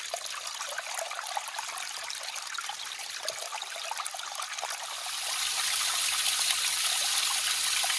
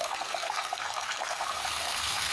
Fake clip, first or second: second